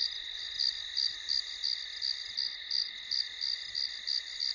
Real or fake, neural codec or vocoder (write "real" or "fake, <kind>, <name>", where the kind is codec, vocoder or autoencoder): real